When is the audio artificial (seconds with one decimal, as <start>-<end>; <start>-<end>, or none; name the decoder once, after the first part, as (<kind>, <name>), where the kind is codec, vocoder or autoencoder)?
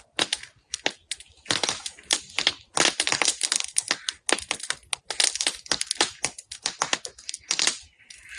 none